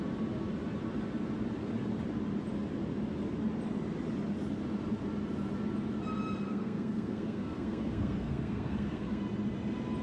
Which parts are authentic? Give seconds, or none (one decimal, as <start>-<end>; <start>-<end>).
0.0-6.5; 9.2-10.0